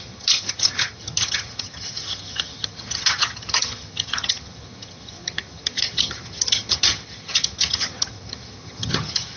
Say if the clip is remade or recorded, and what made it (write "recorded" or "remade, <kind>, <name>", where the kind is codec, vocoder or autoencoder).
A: remade, vocoder, HiFi-GAN